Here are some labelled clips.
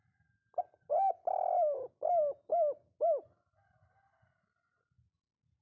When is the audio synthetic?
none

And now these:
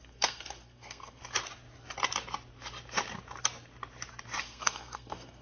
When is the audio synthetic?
0.0-1.2 (codec, SNAC); 4.4-5.4

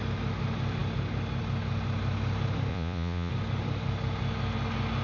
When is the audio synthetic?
2.7-3.3 (vocoder, Vocos)

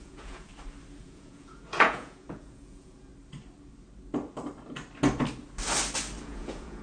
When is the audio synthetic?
0.0-0.5 (vocoder, Vocos); 1.0-3.1; 6.2-6.8

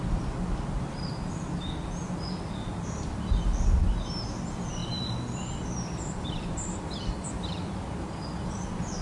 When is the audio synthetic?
0.0-3.5 (vocoder, BigVGAN v2); 4.1-9.0